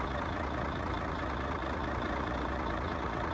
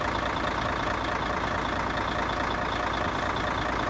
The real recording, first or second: second